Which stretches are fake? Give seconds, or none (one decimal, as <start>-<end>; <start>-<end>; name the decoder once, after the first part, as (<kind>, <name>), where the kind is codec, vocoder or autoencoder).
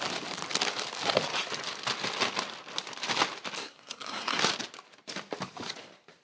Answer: 3.6-4.4 (codec, SNAC)